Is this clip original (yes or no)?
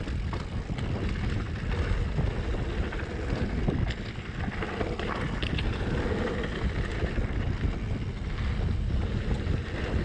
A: yes